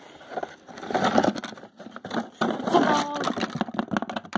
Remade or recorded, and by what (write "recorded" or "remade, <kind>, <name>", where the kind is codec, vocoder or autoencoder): recorded